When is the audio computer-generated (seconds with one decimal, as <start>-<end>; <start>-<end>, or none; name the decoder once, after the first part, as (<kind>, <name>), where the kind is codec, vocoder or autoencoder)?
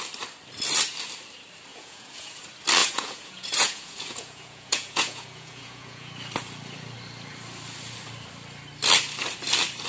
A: 1.7-2.4 (vocoder, Vocos); 2.8-6.1